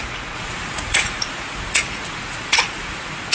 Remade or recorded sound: remade